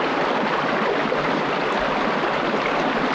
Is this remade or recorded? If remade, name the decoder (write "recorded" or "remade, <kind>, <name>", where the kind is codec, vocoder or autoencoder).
recorded